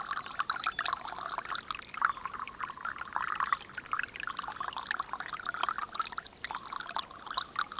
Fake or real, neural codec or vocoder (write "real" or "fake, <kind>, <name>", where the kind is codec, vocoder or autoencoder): real